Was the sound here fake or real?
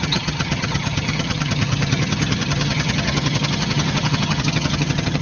fake